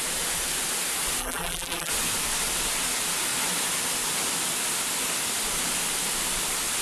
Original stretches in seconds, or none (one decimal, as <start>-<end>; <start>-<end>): 0.0-1.2; 1.9-6.8